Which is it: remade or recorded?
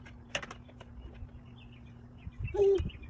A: recorded